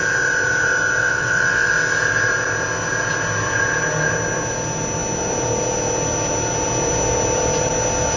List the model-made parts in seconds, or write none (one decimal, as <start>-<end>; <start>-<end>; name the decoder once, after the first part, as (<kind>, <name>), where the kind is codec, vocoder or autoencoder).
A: 1.0-1.7 (vocoder, WaveNeXt)